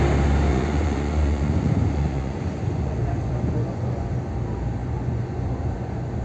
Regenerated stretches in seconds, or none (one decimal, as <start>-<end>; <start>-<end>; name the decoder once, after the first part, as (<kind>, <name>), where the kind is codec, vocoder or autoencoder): 0.5-4.2 (vocoder, Vocos); 4.8-6.2